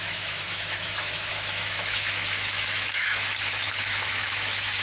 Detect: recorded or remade remade